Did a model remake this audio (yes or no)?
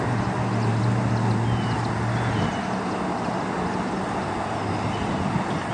no